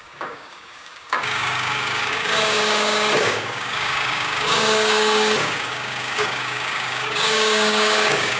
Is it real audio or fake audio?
fake